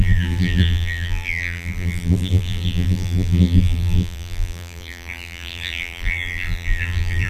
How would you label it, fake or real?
fake